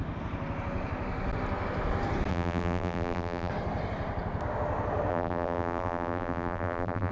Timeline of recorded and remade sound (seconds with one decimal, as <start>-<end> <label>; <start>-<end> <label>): 0.0-2.3 recorded; 2.3-3.5 remade; 3.5-5.1 recorded; 5.1-7.1 remade